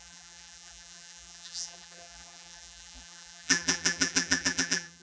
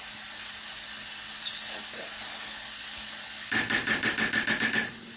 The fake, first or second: first